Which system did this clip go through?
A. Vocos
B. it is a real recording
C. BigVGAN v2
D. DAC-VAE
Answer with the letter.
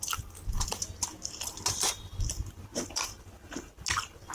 B